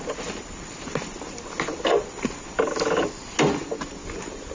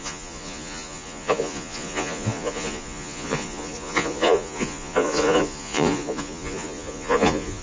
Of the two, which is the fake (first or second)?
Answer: second